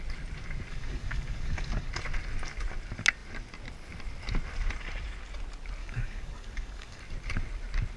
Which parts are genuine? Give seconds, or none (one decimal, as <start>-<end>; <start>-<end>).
0.0-0.7; 1.9-5.8; 7.0-8.0